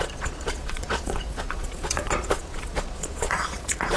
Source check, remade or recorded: remade